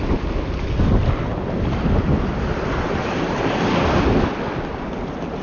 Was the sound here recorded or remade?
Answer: recorded